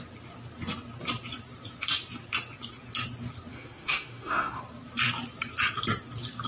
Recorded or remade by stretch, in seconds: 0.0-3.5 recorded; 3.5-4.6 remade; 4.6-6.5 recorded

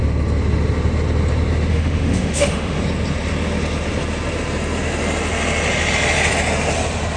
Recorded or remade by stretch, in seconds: 0.0-1.7 recorded; 1.7-2.8 remade; 2.8-7.2 recorded

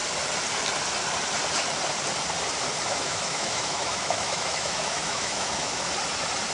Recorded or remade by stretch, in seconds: 0.0-2.9 recorded; 2.9-5.9 remade; 5.9-6.5 recorded

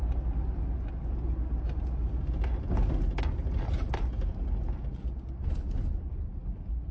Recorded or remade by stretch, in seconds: 0.0-6.9 recorded

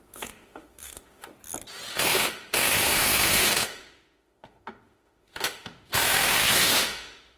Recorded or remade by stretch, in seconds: 0.0-1.3 remade; 1.3-1.9 recorded; 1.9-7.4 remade

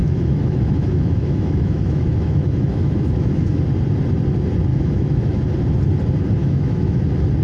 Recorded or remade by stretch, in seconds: 0.0-3.6 remade; 3.6-4.7 recorded; 4.7-5.4 remade; 5.4-6.4 recorded; 6.4-7.0 remade; 7.0-7.4 recorded

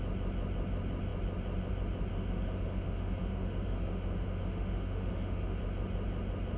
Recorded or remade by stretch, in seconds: 0.0-2.1 recorded; 2.1-5.6 remade; 5.6-6.6 recorded

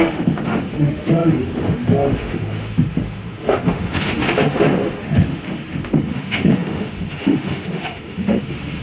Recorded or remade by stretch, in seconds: 0.0-8.8 remade